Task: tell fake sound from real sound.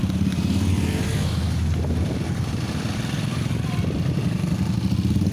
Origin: real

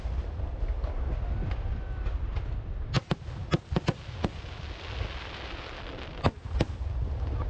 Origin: real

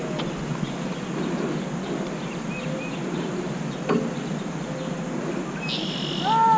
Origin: real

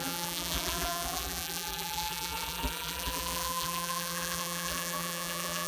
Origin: fake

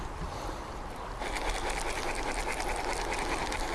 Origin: real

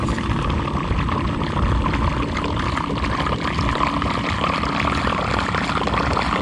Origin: real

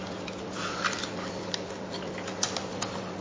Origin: fake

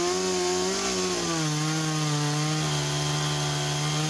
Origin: real